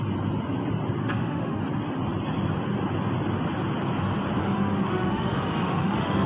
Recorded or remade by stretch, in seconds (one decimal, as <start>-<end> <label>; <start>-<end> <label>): 0.0-1.0 recorded; 1.0-1.6 remade; 1.6-4.4 recorded; 4.4-6.3 remade